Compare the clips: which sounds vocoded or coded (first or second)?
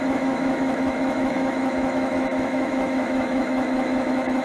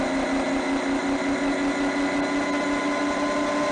first